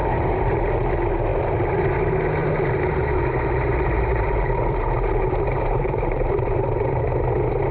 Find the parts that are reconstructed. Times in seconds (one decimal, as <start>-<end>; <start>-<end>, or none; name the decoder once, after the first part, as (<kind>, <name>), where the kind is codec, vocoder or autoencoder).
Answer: 0.0-0.6 (vocoder, BigVGAN v2); 2.4-7.0